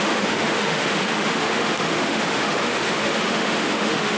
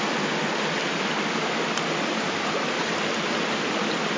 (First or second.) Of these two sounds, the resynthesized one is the first